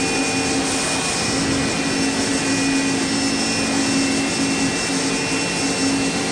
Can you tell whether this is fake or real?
real